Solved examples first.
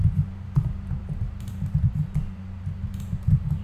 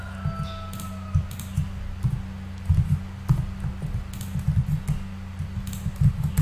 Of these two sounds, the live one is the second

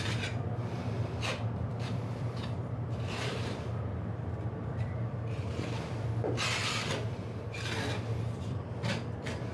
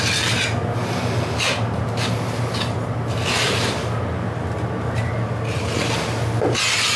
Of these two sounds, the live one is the second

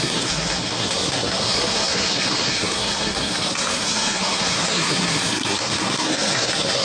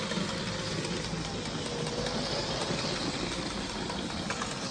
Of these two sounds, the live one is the second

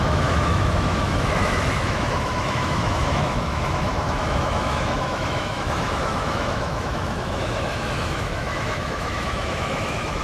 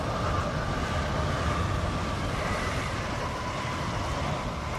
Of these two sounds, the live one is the second